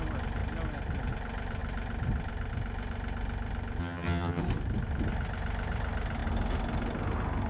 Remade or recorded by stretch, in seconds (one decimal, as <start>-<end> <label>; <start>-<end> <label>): 0.0-3.8 recorded; 3.8-4.4 remade; 4.4-7.5 recorded